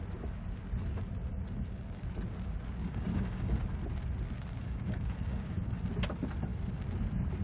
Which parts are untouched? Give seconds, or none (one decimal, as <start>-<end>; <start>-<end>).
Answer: 0.0-2.8; 3.5-4.6; 5.7-7.4